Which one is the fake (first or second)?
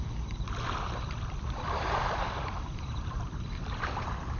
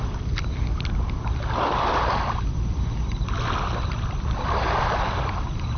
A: first